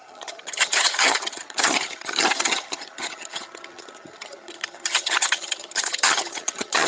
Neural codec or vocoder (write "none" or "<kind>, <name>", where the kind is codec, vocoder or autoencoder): vocoder, HiFi-GAN